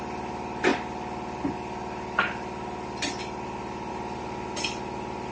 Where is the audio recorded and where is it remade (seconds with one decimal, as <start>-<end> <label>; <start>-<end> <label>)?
0.0-5.3 recorded